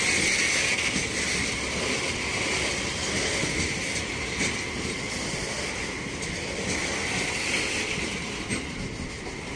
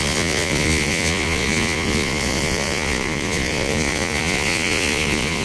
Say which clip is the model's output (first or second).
second